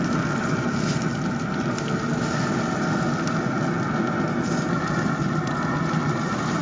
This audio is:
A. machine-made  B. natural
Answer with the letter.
B